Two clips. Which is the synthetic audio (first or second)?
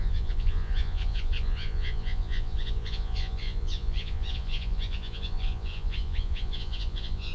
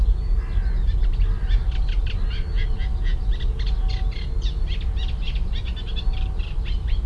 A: first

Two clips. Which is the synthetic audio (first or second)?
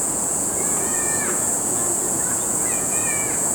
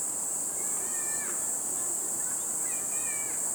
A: first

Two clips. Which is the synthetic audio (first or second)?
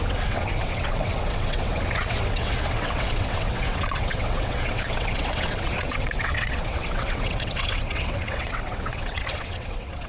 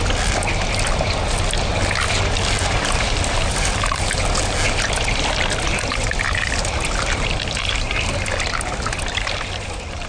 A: first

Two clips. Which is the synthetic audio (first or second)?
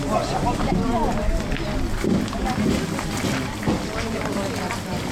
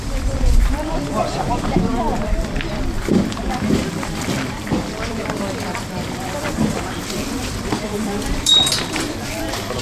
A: second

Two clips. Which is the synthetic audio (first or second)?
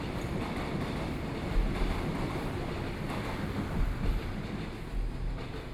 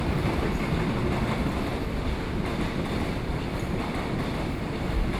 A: second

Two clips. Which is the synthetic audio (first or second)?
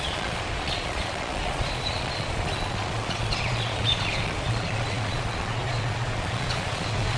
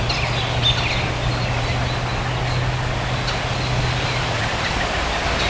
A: first